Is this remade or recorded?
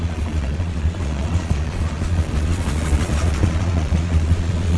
remade